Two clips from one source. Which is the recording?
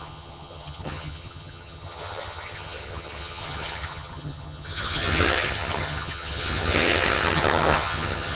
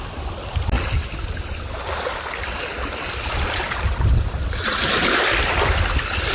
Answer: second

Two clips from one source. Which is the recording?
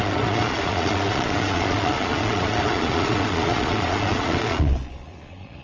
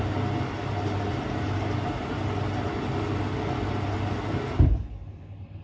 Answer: second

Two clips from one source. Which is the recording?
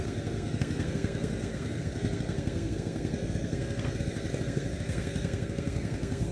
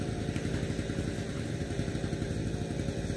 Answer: second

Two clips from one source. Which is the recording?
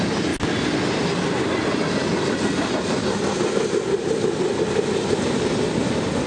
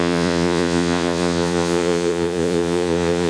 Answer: first